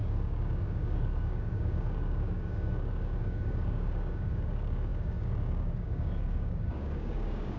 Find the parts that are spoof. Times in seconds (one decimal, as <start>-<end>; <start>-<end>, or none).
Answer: 0.0-7.6